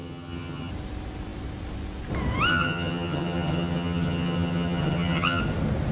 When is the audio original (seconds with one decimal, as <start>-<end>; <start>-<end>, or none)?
0.7-2.5; 5.4-5.9